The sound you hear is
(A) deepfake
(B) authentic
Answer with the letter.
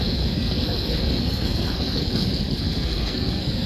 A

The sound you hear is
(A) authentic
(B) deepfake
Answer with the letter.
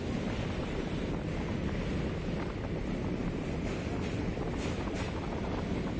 A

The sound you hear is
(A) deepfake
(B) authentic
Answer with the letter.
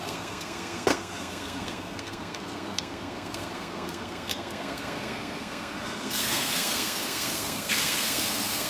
A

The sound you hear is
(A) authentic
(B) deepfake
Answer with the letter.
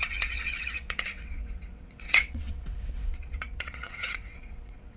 B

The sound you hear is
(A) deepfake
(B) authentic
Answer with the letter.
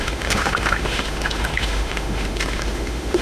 A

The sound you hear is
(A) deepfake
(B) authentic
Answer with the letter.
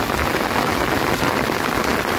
B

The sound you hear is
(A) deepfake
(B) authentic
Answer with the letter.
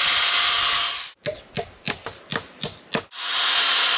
B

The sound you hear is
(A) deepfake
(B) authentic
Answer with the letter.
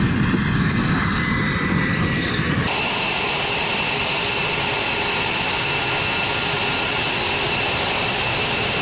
B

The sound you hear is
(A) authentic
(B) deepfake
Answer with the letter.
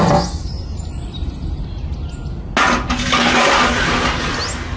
A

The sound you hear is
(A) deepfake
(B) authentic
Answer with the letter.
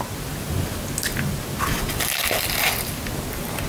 B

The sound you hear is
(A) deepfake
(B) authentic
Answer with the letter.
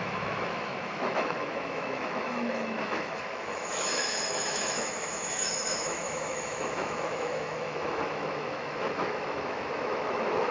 A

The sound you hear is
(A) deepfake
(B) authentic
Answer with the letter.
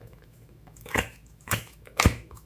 A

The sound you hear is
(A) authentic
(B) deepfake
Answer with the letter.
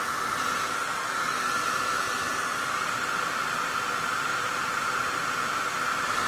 B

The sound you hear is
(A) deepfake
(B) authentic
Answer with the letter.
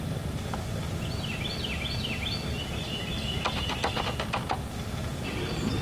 B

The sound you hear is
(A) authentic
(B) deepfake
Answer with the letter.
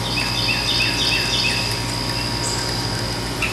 A